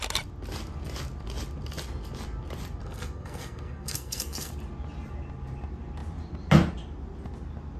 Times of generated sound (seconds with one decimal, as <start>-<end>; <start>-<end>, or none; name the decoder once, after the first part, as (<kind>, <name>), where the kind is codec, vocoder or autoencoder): 2.8-4.5 (codec, SNAC)